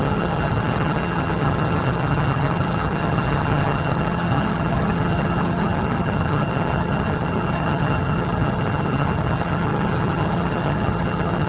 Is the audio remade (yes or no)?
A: yes